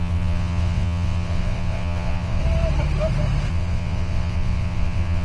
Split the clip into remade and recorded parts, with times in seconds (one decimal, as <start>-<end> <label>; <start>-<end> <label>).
0.0-2.4 remade; 2.4-3.5 recorded; 3.5-5.2 remade